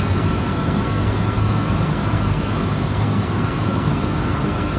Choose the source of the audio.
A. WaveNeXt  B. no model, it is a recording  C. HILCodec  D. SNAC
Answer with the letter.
D